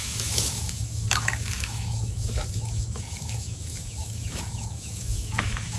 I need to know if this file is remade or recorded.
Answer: remade